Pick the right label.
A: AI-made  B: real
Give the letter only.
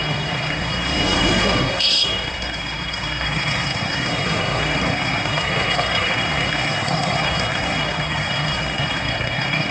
A